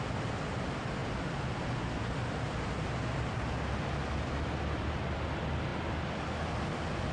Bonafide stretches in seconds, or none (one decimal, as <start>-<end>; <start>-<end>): 0.0-7.1